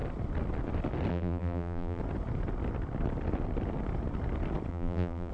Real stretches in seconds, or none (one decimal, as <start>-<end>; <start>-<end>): 0.0-1.1; 2.0-4.7